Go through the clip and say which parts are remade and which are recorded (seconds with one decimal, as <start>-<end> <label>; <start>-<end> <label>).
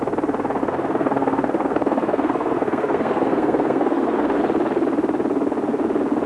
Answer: 0.0-0.6 recorded; 0.6-4.4 remade; 4.4-6.3 recorded